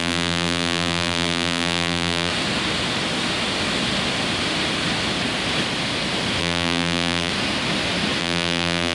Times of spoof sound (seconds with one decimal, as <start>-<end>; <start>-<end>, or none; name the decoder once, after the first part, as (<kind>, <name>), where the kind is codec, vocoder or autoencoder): 0.0-2.3 (vocoder, BigVGAN v2); 6.4-7.3; 8.2-8.9